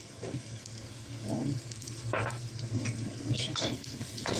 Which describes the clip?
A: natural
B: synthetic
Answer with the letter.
B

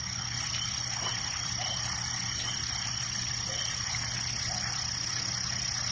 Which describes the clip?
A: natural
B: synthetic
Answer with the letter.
A